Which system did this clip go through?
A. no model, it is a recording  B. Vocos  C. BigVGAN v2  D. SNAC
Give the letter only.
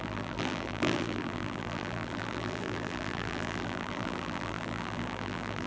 C